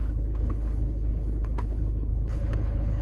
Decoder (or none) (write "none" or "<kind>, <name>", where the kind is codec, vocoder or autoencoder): codec, HILCodec